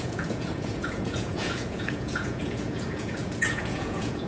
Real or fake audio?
fake